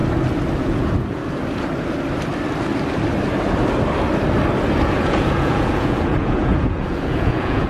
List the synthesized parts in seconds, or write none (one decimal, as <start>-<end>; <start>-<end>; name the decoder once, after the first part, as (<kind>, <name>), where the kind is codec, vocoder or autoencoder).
0.6-1.2 (vocoder, Vocos); 4.9-7.7